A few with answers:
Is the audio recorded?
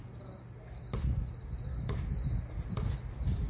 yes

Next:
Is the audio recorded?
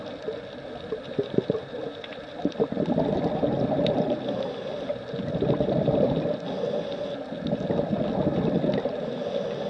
yes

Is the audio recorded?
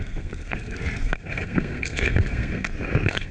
no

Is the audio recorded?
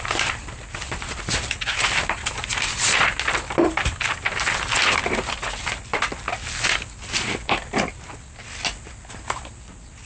yes